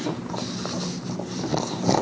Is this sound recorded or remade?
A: recorded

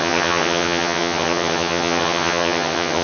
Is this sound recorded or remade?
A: remade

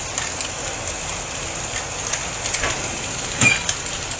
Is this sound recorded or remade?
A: recorded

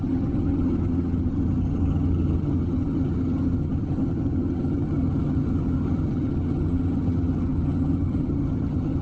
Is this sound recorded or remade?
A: remade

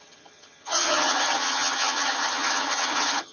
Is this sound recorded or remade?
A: remade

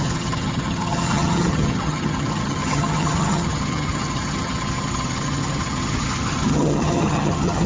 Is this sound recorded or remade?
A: remade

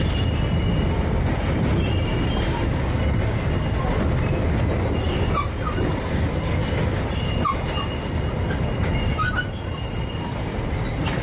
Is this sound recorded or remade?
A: recorded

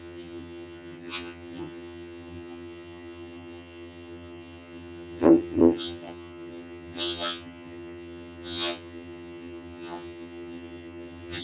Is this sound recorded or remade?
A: remade